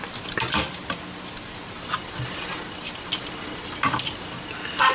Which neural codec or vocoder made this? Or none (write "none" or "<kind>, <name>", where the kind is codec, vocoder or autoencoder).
none